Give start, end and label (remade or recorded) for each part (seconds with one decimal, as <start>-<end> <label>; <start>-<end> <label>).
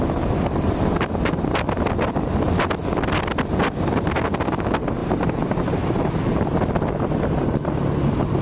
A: 0.0-5.0 recorded; 5.0-6.7 remade; 6.7-8.4 recorded